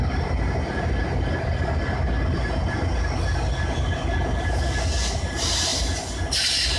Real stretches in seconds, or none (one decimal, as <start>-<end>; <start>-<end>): 0.0-6.8